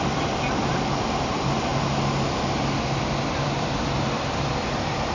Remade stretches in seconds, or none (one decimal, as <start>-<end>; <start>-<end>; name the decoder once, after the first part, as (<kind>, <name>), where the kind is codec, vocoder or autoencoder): 0.0-1.7 (vocoder, BigVGAN v2); 3.2-5.1